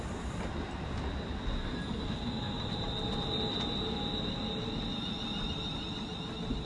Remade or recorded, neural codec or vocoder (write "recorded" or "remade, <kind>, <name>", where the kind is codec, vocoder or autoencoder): recorded